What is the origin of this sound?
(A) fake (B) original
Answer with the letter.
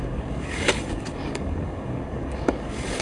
A